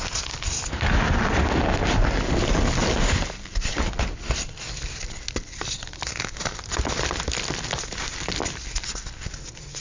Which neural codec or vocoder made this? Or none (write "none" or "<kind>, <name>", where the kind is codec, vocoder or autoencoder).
none